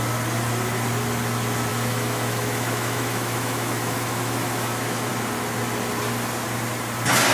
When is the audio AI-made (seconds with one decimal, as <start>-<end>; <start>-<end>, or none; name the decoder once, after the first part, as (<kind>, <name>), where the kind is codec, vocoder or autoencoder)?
1.7-5.1 (autoencoder, DAC-VAE)